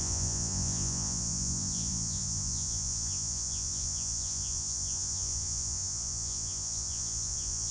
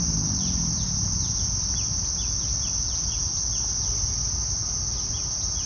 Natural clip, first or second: second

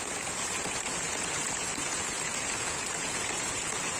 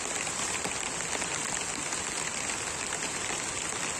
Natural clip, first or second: second